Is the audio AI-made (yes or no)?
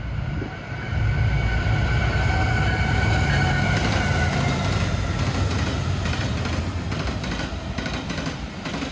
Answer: no